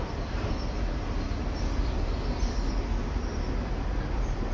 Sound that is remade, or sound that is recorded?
recorded